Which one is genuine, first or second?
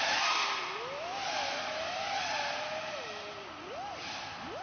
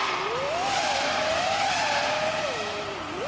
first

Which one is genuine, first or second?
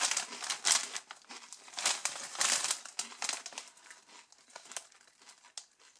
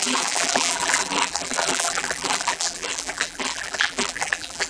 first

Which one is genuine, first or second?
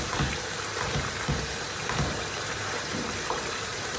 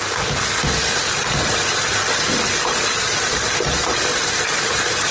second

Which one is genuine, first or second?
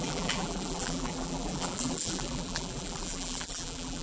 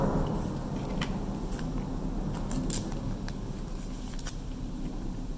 second